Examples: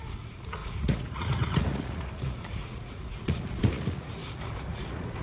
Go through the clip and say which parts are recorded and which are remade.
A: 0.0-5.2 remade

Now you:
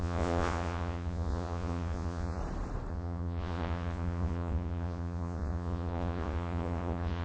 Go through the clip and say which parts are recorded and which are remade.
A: 0.0-2.4 remade; 2.4-2.9 recorded; 2.9-7.2 remade

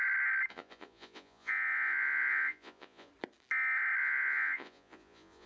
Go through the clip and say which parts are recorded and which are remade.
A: 0.0-0.5 recorded; 0.5-3.1 remade; 3.1-4.0 recorded; 4.0-5.5 remade